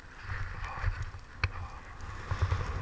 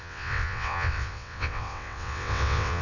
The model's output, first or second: second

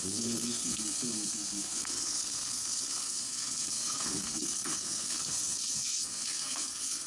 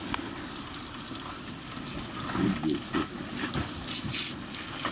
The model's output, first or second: first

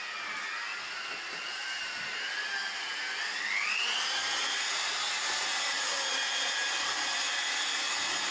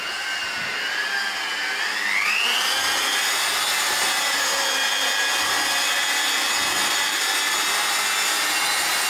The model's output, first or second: first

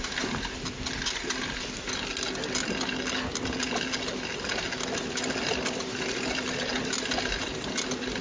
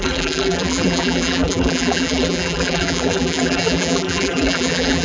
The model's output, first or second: second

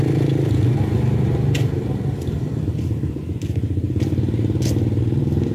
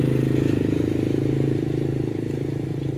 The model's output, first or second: second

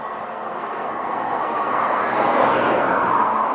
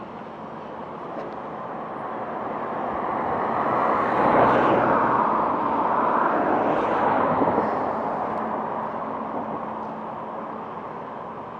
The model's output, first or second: first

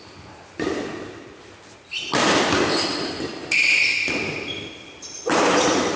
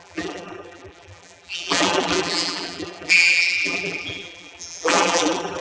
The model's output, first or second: second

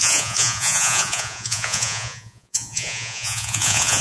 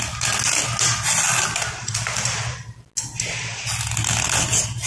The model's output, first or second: first